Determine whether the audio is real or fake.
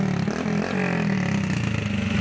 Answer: real